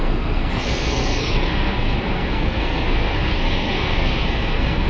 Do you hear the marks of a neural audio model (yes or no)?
yes